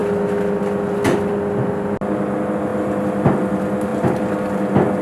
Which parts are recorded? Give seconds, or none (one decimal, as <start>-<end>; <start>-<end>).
0.0-5.0